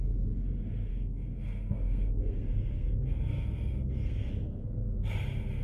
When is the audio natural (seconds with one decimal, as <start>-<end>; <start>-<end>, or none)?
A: 0.0-0.9; 4.3-5.6